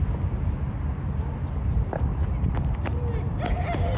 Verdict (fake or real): real